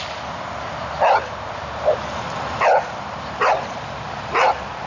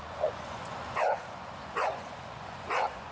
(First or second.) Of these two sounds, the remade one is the second